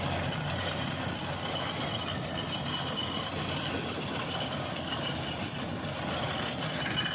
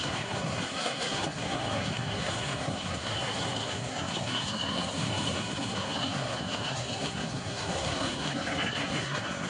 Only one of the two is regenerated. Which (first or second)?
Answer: second